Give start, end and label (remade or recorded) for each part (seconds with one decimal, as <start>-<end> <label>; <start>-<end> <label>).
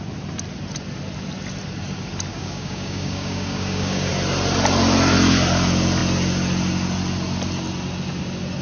0.0-2.3 recorded; 2.3-4.1 remade; 4.1-8.6 recorded